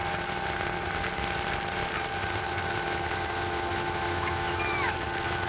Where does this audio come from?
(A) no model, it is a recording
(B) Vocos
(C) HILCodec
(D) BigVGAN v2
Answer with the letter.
A